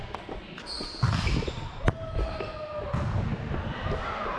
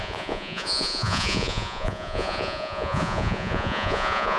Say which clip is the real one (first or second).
first